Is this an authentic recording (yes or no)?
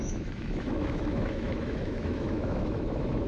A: no